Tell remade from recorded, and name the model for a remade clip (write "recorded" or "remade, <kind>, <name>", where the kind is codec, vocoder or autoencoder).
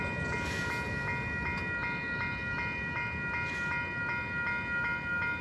recorded